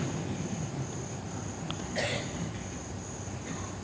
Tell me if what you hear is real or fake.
real